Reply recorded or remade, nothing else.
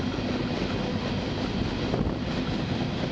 recorded